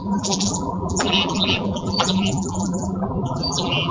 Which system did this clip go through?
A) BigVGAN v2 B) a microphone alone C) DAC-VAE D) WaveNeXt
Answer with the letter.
A